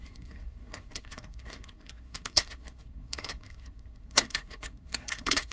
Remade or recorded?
remade